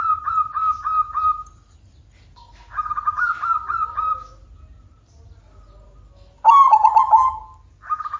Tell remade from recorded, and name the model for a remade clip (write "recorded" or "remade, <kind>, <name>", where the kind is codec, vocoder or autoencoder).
recorded